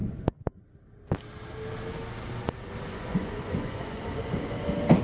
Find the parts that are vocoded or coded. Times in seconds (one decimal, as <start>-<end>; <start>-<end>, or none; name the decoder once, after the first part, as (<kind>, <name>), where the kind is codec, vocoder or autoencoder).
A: 0.0-0.6 (vocoder, Vocos); 2.9-4.3